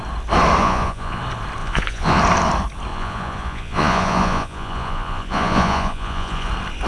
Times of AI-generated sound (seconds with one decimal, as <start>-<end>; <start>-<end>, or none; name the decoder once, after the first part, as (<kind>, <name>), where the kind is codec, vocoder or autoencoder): 0.6-1.2 (vocoder, Vocos); 1.6-2.2; 2.9-6.5